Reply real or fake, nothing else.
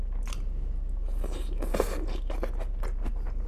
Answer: real